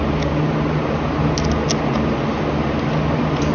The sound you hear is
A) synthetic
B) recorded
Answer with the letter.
B